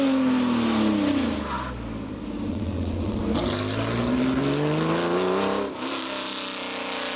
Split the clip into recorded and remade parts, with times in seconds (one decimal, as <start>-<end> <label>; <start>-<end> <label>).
0.0-2.5 recorded; 2.5-3.2 remade; 3.2-7.2 recorded